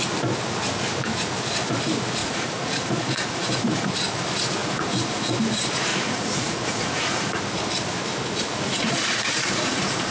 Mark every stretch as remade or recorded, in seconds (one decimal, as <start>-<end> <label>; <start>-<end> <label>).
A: 0.0-2.2 recorded; 2.2-3.9 remade; 3.9-4.6 recorded; 4.6-5.3 remade; 5.3-5.9 recorded; 5.9-7.4 remade; 7.4-8.7 recorded; 8.7-10.1 remade